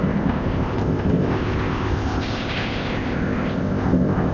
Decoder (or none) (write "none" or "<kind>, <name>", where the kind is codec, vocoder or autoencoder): codec, ZipCodec